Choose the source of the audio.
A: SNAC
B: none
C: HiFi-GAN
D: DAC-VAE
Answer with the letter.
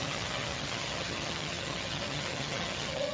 C